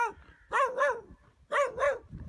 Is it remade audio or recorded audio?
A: recorded